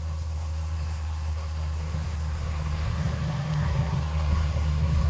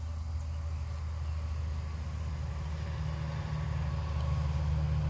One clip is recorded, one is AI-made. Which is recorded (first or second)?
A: second